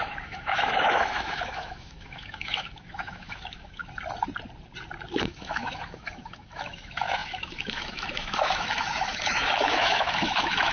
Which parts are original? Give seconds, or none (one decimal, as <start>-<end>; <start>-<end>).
3.8-5.2